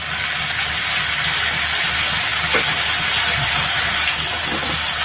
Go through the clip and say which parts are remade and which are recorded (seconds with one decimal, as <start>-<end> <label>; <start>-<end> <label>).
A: 0.0-2.3 recorded; 2.3-4.4 remade; 4.4-5.0 recorded